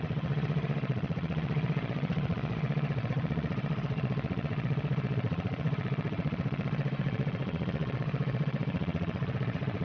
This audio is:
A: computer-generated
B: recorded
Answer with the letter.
A